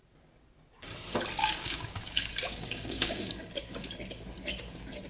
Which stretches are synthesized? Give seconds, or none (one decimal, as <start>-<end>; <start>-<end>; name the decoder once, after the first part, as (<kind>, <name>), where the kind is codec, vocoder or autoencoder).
1.4-3.3 (codec, DAC)